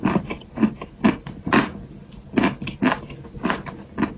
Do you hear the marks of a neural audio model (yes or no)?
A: no